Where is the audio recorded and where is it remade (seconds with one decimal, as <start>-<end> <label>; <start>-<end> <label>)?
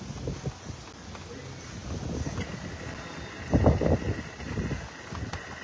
0.0-5.6 recorded